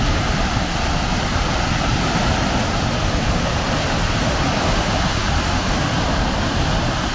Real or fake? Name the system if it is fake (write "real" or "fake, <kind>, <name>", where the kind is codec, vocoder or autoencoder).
real